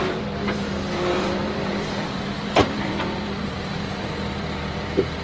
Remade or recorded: remade